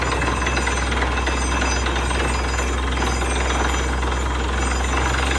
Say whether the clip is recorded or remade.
recorded